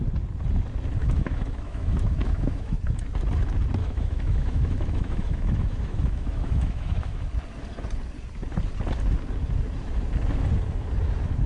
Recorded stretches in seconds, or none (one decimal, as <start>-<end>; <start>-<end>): 0.0-1.0; 2.8-3.8; 7.2-11.5